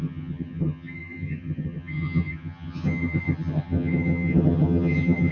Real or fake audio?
fake